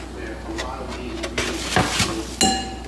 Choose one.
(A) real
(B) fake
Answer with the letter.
A